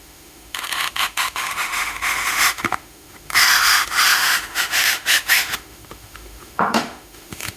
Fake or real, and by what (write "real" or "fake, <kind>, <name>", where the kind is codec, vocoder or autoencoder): fake, autoencoder, DAC-VAE